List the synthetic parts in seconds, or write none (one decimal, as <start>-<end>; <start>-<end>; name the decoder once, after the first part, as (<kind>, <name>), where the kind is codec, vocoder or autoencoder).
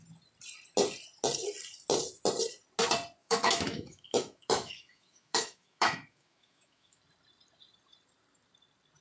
3.2-7.0 (autoencoder, DAC-VAE)